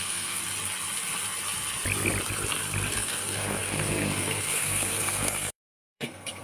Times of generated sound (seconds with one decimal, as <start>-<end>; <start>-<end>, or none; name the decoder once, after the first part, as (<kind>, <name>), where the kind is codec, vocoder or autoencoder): 0.0-0.4 (codec, SNAC); 2.9-6.4